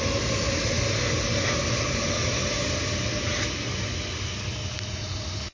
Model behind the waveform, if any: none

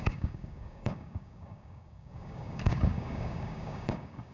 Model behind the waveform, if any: codec, DAC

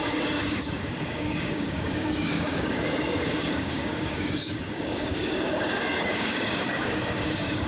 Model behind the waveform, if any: codec, DAC